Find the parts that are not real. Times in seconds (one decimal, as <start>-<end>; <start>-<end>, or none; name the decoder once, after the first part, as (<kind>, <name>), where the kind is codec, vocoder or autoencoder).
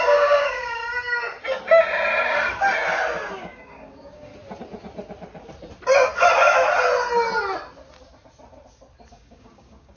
0.0-0.8 (codec, DAC); 3.3-4.3; 9.1-10.0